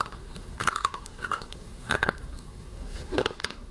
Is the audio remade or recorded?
remade